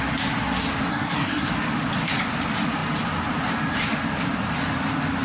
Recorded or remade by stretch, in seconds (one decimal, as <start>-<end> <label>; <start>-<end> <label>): 0.0-0.9 recorded; 0.9-1.5 remade; 1.5-5.2 recorded